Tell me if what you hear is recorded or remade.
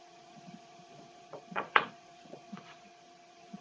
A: remade